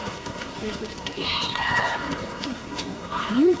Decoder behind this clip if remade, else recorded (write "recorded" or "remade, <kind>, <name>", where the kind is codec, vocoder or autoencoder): remade, codec, SNAC